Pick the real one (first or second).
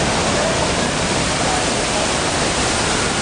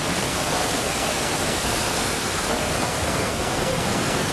first